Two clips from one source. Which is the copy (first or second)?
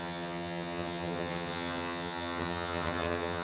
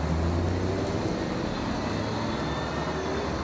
first